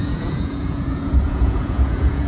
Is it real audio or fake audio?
fake